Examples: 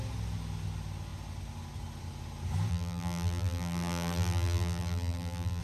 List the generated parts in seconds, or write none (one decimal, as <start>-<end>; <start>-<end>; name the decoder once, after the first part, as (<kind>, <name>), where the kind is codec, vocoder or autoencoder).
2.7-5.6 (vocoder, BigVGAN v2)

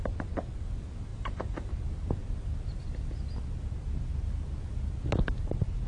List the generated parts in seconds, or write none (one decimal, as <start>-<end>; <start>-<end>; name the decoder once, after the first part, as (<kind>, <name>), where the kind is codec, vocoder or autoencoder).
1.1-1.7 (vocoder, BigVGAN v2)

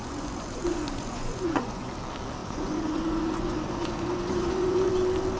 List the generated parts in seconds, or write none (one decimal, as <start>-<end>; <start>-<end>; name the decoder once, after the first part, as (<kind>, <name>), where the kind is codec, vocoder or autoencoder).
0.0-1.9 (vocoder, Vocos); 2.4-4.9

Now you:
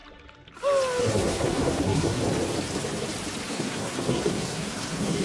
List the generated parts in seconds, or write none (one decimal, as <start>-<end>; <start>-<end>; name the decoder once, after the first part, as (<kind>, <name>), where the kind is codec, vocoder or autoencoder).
1.0-2.2 (codec, SNAC); 3.5-5.2